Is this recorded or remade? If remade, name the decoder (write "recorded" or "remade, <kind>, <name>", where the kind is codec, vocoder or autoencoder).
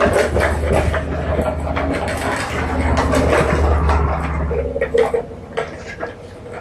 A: recorded